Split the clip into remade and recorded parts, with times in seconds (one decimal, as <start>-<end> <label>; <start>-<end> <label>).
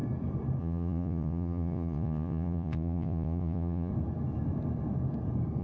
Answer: 0.0-0.6 recorded; 0.6-3.9 remade; 3.9-5.6 recorded